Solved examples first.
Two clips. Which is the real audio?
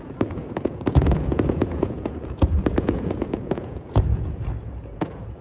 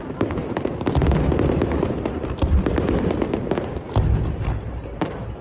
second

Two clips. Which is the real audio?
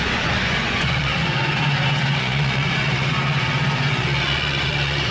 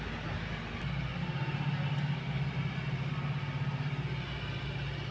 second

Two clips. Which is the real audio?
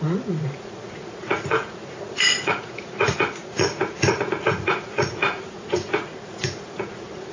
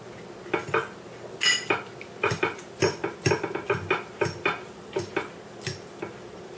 second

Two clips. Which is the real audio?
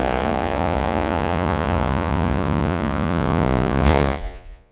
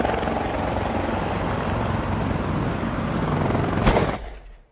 second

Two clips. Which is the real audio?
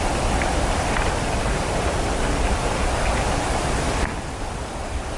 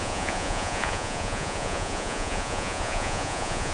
first